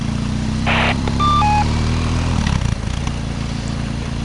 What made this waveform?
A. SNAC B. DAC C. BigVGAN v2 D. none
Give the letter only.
C